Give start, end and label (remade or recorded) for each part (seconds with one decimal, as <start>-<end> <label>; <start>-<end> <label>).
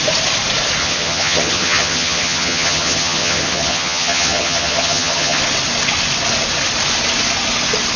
0.0-0.8 recorded; 0.8-5.4 remade; 5.4-8.0 recorded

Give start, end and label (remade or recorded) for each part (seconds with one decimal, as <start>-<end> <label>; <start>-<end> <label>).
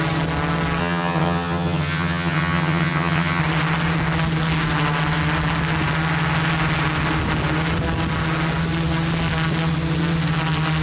0.0-0.8 recorded; 0.8-3.4 remade; 3.4-10.8 recorded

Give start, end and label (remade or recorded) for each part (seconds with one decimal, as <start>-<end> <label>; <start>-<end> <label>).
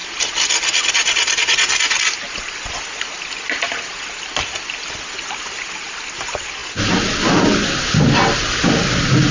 0.0-9.3 recorded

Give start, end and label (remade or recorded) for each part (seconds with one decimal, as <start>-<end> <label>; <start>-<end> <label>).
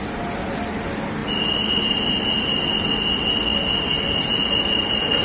0.0-5.2 recorded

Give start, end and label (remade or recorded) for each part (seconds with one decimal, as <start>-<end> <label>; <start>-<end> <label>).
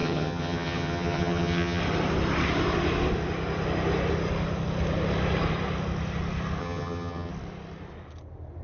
0.0-1.8 remade; 1.8-6.6 recorded; 6.6-7.3 remade; 7.3-8.6 recorded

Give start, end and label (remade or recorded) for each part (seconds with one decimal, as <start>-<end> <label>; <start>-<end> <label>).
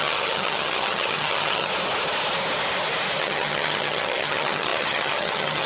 0.0-1.7 remade; 1.7-3.2 recorded; 3.2-5.7 remade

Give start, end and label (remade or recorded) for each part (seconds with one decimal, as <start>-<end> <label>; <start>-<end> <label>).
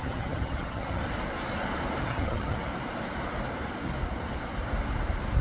0.0-1.0 remade; 1.0-2.0 recorded; 2.0-2.7 remade; 2.7-5.4 recorded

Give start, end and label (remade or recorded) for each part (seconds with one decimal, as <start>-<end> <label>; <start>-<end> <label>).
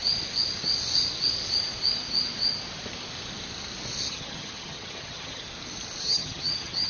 0.0-4.1 recorded; 4.1-5.4 remade; 5.4-6.0 recorded; 6.0-6.9 remade